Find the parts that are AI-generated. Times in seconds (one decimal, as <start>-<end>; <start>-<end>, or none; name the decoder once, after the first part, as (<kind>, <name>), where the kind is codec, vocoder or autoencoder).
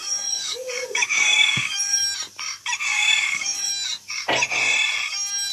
0.0-2.0 (codec, DAC); 2.8-3.7